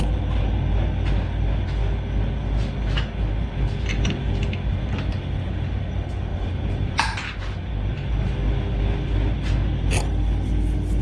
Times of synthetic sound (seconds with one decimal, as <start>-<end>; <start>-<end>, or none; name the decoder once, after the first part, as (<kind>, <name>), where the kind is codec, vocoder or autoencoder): 6.3-8.3 (vocoder, BigVGAN v2)